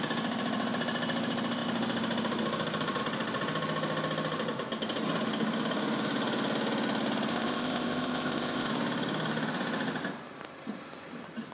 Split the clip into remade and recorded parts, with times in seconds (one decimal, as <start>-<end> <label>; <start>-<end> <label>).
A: 0.0-7.3 recorded; 7.3-8.7 remade; 8.7-11.5 recorded